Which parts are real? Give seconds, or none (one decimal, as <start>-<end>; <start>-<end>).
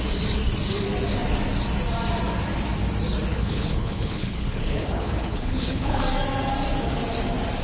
0.0-3.3; 6.0-7.6